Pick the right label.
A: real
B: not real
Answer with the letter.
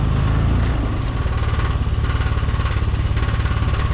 A